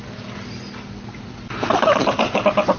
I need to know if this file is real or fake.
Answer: real